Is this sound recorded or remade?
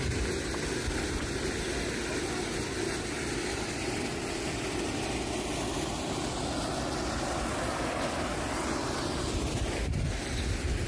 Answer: recorded